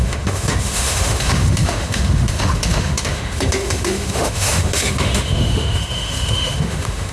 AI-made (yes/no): yes